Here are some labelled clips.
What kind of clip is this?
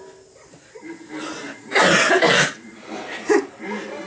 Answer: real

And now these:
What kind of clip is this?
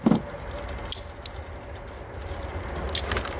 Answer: real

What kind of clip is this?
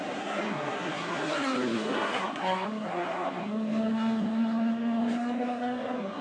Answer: fake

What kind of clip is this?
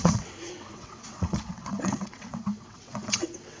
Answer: fake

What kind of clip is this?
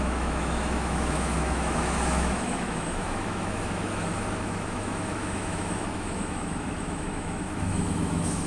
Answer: fake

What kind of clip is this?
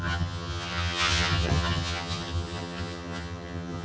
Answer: fake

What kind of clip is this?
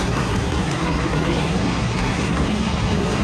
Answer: fake